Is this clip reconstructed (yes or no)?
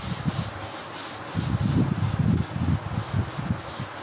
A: no